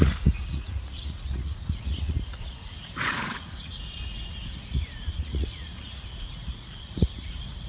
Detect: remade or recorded remade